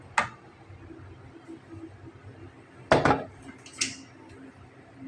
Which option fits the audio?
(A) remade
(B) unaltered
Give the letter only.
B